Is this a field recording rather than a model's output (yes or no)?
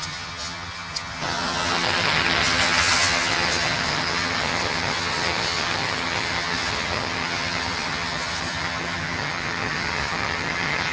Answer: no